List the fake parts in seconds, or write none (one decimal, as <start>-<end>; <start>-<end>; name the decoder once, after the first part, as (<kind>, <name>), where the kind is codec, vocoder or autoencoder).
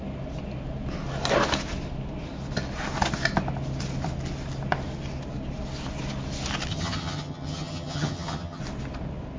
6.7-8.6 (vocoder, HiFi-GAN)